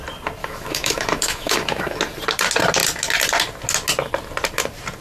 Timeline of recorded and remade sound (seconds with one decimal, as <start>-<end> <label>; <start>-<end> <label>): 0.0-0.4 recorded; 0.4-2.0 remade; 2.0-5.0 recorded